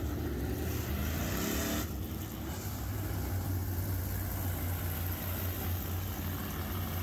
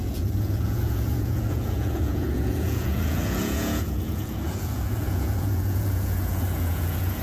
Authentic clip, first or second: first